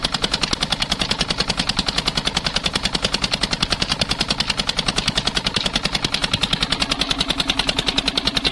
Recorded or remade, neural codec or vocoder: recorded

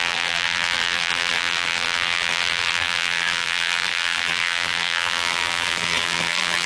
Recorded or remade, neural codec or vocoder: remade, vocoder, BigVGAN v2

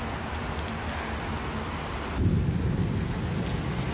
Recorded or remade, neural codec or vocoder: recorded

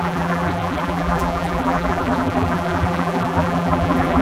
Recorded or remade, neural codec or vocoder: remade, vocoder, BigVGAN v2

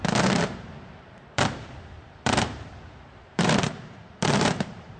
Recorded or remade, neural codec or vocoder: remade, vocoder, BigVGAN v2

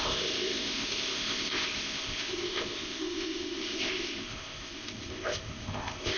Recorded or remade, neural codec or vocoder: remade, codec, ZipCodec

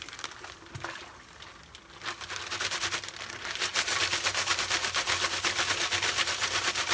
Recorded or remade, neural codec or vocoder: recorded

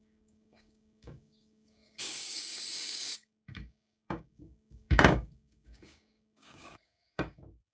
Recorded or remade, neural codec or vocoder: remade, codec, DAC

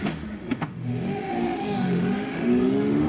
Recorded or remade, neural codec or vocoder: remade, autoencoder, DAC-VAE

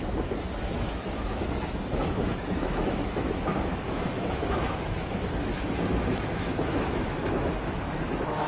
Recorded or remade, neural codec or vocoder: remade, autoencoder, DAC-VAE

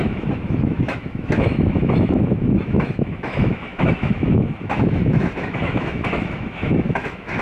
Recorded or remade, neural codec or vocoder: remade, autoencoder, DAC-VAE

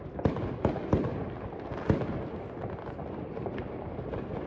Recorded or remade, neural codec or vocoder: recorded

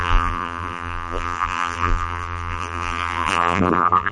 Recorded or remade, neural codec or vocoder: remade, vocoder, BigVGAN v2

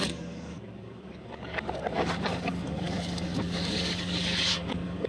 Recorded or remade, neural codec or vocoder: remade, codec, DAC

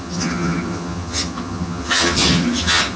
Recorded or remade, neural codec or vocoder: remade, vocoder, HiFi-GAN